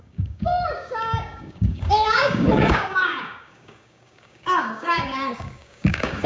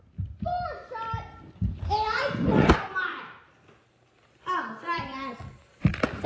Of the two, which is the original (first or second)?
second